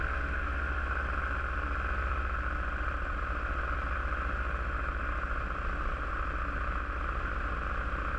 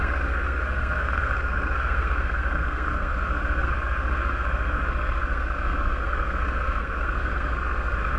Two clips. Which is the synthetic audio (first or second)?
second